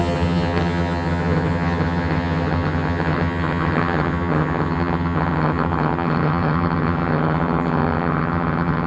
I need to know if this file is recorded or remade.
remade